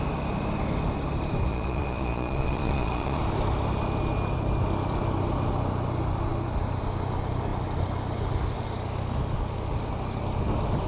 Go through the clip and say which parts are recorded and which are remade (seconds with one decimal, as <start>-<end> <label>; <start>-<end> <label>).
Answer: 0.0-1.5 recorded; 1.5-3.2 remade; 3.2-10.9 recorded